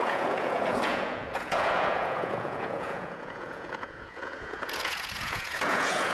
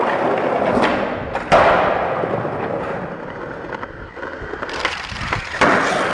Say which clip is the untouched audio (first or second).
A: second